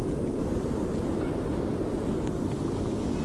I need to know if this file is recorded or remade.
recorded